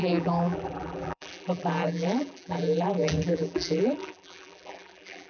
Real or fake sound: fake